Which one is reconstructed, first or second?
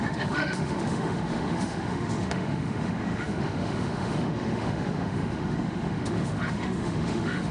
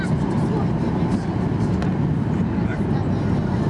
first